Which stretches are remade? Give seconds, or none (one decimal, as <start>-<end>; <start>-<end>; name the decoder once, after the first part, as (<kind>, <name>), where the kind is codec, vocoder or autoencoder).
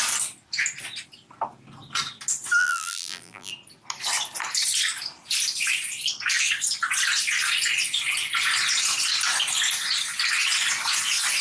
2.6-3.5 (vocoder, BigVGAN v2)